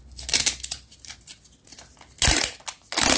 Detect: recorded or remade recorded